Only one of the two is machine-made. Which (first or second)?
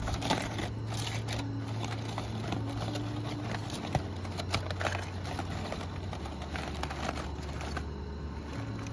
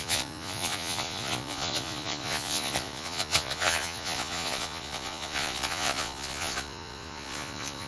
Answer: second